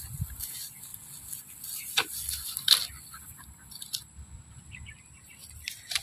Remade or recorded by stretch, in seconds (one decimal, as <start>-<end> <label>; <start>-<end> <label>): 0.0-0.9 remade; 0.9-3.3 recorded; 3.3-6.0 remade